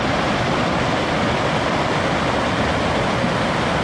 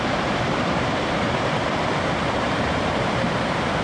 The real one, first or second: first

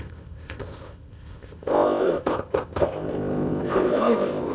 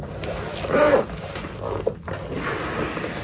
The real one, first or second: second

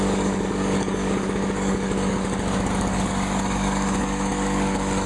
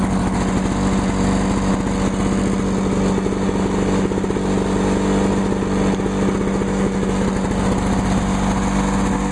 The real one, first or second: second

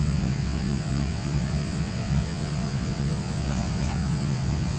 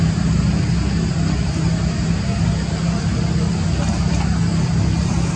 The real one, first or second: second